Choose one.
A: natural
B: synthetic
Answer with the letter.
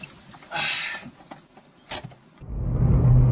A